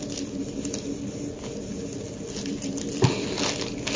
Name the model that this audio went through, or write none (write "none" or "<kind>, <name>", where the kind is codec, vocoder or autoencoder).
none